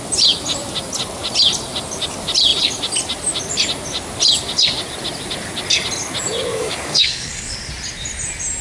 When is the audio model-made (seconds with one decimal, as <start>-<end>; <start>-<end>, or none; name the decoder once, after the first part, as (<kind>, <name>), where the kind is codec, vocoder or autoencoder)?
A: 6.5-7.7 (codec, DAC)